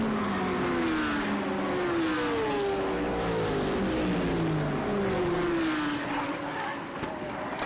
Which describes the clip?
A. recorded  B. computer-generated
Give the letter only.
A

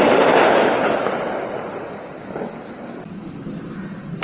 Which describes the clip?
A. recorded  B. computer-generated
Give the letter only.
A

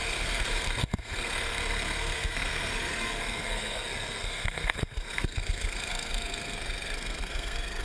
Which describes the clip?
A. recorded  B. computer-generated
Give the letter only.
B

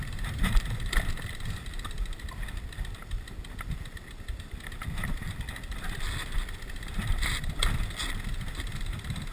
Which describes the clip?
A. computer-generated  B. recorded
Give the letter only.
B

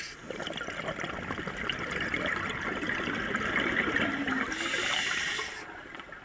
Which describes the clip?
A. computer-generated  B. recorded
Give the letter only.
B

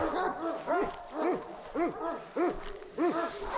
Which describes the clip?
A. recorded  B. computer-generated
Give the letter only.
A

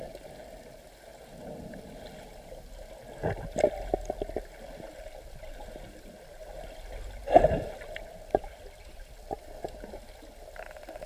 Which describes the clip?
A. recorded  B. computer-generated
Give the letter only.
A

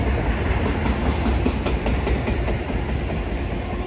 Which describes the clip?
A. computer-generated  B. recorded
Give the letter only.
B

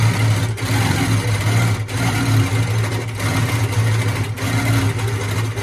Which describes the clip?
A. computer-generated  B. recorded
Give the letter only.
B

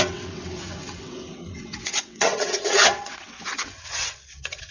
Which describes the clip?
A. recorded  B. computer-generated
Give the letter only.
B